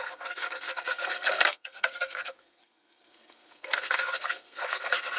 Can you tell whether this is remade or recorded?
remade